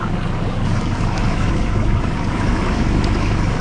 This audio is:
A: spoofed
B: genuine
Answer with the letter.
A